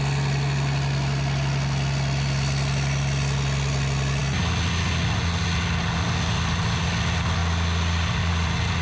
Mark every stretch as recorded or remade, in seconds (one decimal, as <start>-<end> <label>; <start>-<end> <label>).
0.0-8.8 recorded